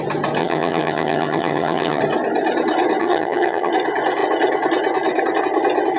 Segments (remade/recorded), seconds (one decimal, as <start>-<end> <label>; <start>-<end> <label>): 0.0-0.4 recorded; 0.4-2.0 remade; 2.0-3.0 recorded; 3.0-3.7 remade; 3.7-6.0 recorded